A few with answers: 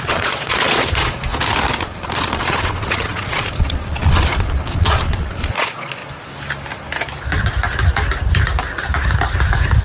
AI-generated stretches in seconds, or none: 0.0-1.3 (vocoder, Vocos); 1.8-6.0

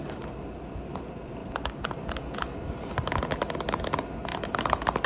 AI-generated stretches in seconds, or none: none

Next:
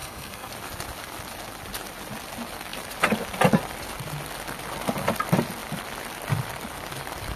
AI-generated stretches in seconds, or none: 0.0-0.5 (codec, SNAC)

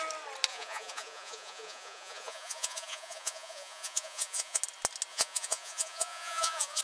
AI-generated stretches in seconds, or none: 0.5-4.6 (vocoder, Vocos); 5.1-6.8